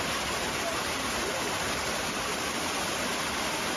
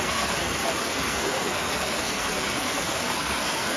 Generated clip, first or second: second